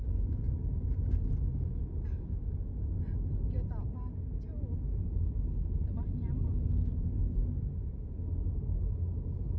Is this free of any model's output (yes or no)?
yes